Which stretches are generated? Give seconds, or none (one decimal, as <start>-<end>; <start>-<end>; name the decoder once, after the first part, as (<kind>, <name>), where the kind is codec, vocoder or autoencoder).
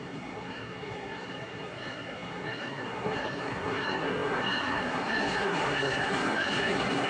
0.0-7.1 (codec, SNAC)